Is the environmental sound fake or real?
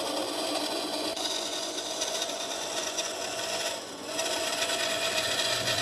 fake